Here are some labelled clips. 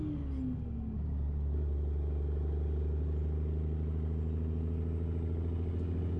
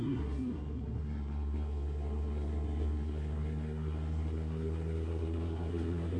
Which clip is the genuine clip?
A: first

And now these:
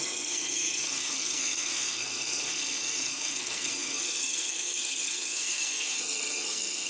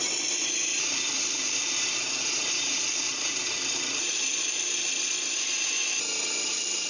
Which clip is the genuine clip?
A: second